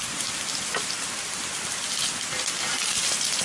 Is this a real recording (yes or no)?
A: yes